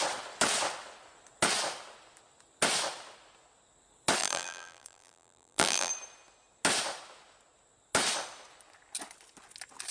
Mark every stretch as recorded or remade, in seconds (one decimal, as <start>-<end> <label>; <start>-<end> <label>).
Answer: 0.0-4.2 recorded; 4.2-5.9 remade; 5.9-9.9 recorded